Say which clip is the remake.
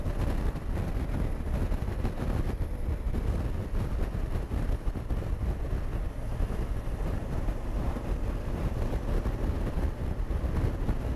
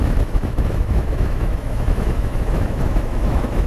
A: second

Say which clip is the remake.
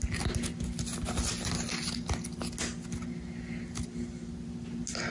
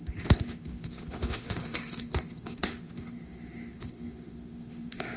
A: second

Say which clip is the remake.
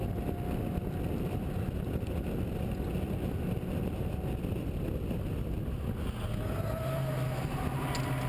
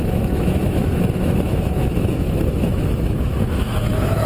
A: second